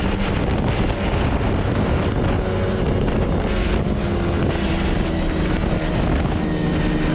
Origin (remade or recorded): recorded